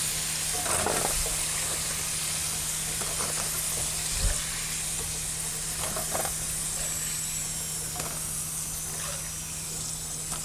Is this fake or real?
real